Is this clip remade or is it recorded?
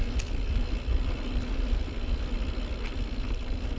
recorded